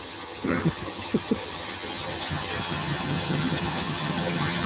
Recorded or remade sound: remade